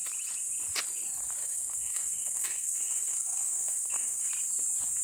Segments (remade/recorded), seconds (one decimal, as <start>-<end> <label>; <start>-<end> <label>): 0.0-1.4 recorded; 1.4-4.3 remade; 4.3-5.0 recorded